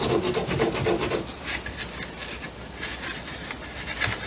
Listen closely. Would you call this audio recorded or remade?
recorded